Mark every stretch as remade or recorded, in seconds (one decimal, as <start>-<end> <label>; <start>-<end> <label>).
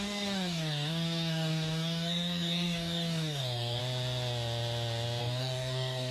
0.0-3.8 remade; 3.8-5.2 recorded; 5.2-6.1 remade